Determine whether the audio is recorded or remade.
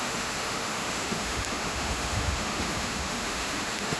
remade